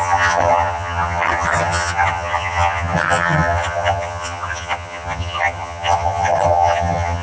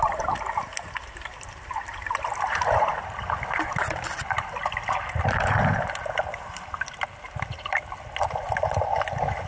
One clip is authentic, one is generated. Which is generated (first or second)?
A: first